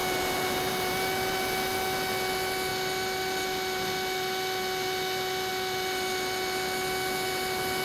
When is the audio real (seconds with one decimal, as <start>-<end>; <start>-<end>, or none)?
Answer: 0.0-7.8